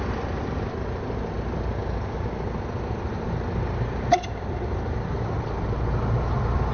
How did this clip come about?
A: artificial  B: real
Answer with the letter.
B